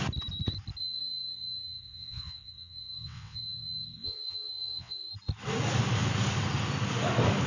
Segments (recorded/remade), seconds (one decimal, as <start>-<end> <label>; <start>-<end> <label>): 0.0-0.8 recorded; 0.8-5.1 remade; 5.1-7.5 recorded